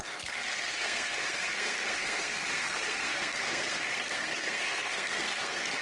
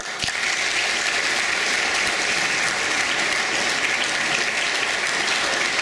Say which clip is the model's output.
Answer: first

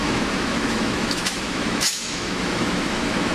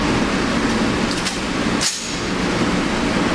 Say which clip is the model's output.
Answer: first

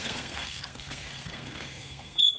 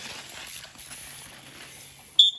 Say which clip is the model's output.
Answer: first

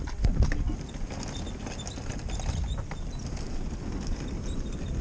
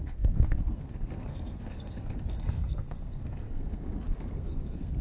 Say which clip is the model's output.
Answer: second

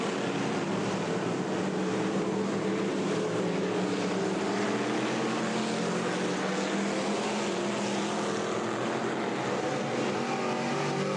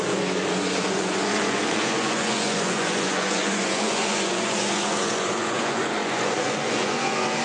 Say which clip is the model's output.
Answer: second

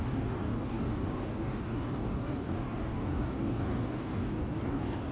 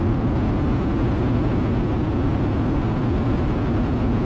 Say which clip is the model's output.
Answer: first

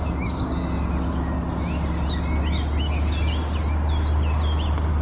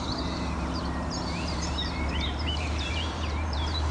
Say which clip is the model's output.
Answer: second